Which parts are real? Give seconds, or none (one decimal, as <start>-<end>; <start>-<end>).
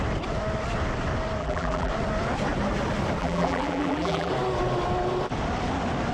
0.0-1.4; 1.9-3.2; 4.3-6.1